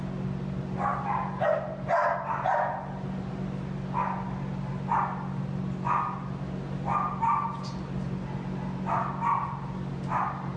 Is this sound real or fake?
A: real